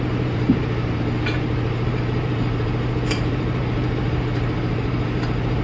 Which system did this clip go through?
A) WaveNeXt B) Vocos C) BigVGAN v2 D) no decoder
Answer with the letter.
C